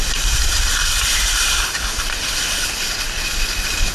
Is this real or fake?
real